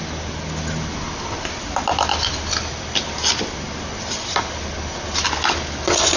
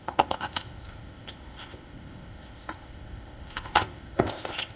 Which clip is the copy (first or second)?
second